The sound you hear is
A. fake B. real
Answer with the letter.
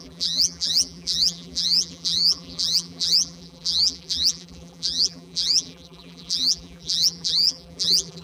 A